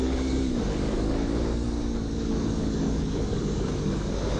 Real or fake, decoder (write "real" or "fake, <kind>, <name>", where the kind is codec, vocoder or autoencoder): fake, codec, DAC